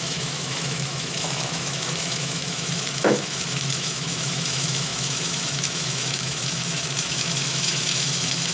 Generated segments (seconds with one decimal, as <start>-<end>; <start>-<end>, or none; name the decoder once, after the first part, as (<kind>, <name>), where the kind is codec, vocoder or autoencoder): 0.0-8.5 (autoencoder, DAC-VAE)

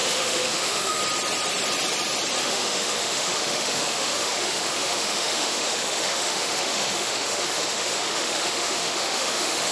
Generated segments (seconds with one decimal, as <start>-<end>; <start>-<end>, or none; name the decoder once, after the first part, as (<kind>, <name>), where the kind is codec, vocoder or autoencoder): 0.0-1.0 (autoencoder, DAC-VAE); 2.4-9.7

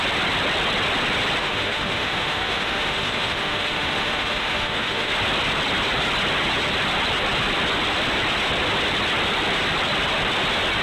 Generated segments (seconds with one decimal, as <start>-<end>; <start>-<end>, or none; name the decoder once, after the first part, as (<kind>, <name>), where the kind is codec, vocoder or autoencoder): 1.4-5.1 (autoencoder, DAC-VAE)